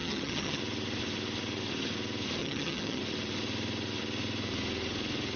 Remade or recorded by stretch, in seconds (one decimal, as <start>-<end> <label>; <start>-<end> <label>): 0.0-0.6 remade; 0.6-2.4 recorded; 2.4-3.0 remade; 3.0-5.4 recorded